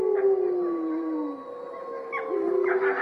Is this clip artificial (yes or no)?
no